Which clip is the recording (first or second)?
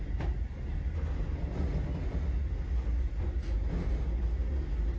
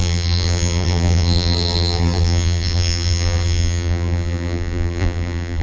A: first